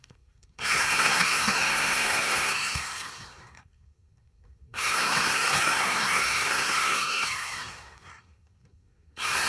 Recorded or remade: remade